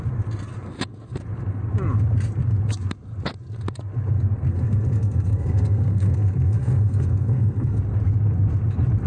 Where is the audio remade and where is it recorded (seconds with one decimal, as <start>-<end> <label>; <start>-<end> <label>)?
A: 0.0-4.5 recorded; 4.5-7.8 remade; 7.8-9.1 recorded